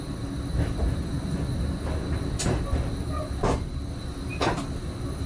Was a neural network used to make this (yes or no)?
no